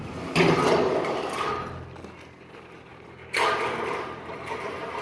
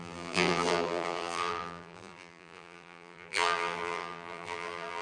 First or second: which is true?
first